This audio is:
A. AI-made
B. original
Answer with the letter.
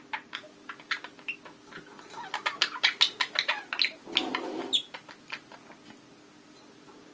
B